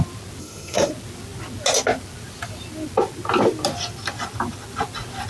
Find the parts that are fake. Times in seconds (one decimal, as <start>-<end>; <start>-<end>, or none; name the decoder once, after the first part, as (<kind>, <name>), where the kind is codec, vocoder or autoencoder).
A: 0.4-0.9 (codec, SNAC)